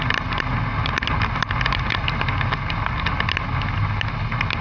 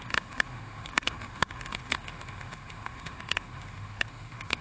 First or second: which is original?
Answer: first